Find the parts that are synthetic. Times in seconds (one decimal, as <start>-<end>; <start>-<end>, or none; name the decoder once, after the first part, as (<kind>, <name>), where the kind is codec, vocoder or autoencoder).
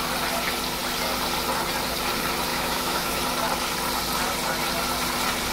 2.5-3.2 (autoencoder, DAC-VAE)